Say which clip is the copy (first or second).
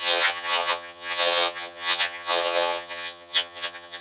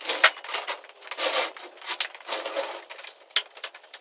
first